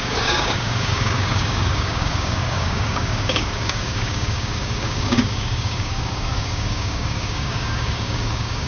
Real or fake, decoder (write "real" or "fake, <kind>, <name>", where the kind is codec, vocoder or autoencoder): fake, codec, DAC